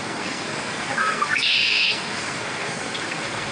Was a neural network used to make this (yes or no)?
yes